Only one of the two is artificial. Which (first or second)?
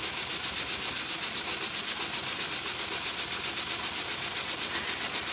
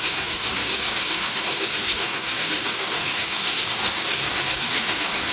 second